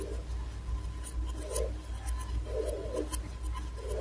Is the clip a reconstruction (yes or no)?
no